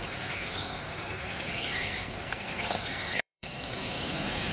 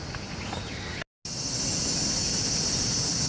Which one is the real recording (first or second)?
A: second